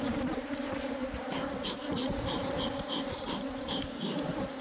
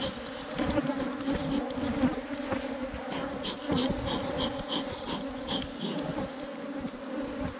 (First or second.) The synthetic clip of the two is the first